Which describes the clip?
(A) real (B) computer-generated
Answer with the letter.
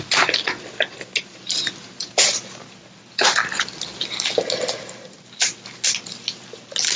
A